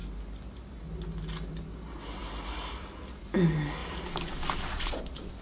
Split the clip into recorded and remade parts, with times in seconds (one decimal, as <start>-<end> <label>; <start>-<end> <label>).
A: 0.0-2.2 recorded; 2.2-3.2 remade; 3.2-3.8 recorded; 3.8-5.4 remade